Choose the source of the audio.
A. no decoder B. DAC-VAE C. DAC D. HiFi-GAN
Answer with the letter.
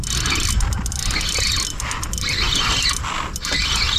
A